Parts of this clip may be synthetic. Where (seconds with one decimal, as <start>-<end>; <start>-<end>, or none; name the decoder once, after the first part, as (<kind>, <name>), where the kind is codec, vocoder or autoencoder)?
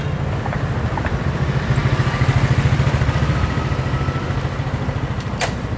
none